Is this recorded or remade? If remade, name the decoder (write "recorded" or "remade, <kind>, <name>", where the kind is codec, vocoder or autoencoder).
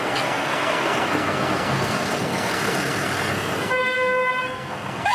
remade, codec, SNAC